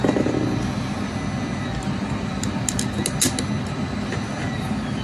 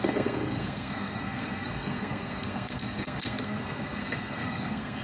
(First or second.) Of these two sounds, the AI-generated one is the second